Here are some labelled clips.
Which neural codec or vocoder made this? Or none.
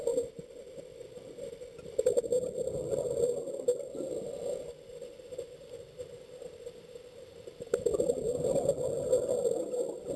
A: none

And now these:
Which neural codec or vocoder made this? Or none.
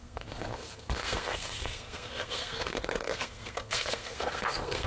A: codec, SNAC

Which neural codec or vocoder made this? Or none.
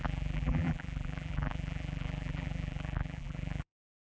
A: vocoder, BigVGAN v2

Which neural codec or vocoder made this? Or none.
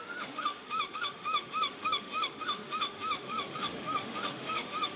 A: autoencoder, DAC-VAE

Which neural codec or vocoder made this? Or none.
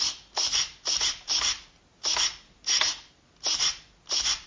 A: none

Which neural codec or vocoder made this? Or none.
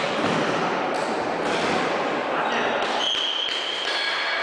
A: vocoder, BigVGAN v2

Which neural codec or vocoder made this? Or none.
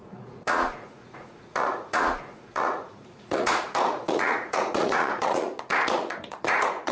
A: vocoder, Vocos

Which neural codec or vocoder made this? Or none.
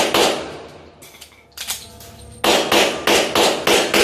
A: none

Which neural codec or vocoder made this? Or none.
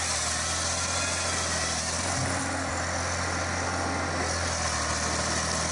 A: none